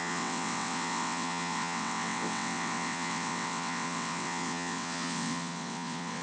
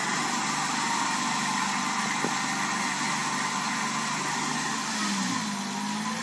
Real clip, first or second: second